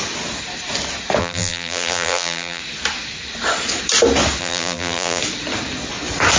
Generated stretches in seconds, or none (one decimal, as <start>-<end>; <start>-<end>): 1.2-2.6; 4.4-5.2